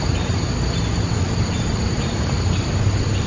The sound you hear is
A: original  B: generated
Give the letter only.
A